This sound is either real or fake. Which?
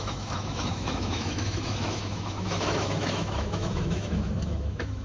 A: fake